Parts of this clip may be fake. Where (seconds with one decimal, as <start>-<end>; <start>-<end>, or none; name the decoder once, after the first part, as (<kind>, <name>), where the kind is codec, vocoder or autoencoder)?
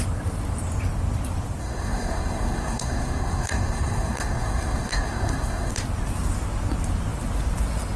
1.6-5.7 (codec, SNAC)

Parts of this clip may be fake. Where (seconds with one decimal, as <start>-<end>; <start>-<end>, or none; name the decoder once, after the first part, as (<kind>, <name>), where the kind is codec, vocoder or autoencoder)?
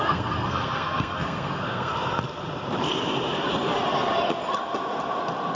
0.0-1.9 (codec, SNAC)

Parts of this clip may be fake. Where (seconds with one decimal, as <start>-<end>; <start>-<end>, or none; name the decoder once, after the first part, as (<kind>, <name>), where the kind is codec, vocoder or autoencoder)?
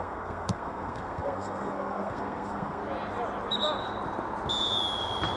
0.0-2.8 (codec, SNAC)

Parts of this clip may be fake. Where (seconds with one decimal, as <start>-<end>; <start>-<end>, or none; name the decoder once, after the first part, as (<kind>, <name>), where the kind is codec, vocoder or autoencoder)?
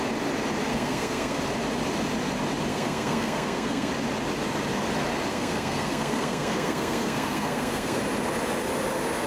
0.7-1.4 (codec, SNAC); 2.7-3.9; 5.3-8.0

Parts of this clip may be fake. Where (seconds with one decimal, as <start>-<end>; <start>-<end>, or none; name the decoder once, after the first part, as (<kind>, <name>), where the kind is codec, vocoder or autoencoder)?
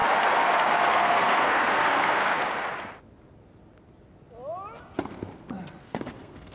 0.9-2.4 (codec, SNAC); 5.8-6.5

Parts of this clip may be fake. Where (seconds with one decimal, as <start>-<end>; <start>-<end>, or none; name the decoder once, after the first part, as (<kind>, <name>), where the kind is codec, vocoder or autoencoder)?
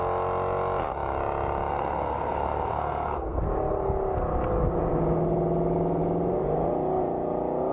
1.7-3.4 (codec, SNAC)